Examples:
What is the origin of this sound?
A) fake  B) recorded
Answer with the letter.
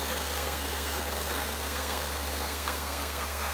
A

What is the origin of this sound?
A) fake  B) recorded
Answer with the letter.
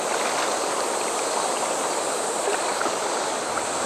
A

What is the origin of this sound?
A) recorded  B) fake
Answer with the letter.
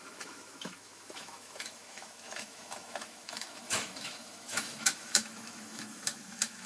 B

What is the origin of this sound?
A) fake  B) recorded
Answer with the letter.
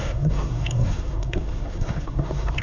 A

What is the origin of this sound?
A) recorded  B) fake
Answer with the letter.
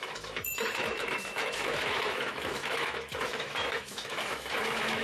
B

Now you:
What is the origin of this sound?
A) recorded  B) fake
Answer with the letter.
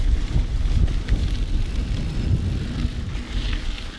A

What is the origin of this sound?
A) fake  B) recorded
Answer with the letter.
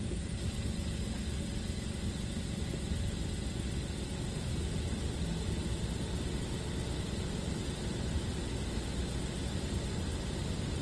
B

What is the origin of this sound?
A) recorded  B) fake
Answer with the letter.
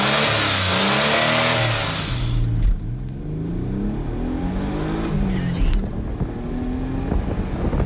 A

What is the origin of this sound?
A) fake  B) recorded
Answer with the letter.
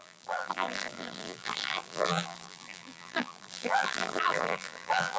A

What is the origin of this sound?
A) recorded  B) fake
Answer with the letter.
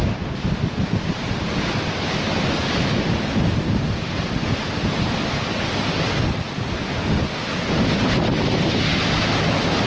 A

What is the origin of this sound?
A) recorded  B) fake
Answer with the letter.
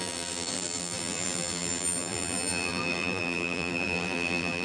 B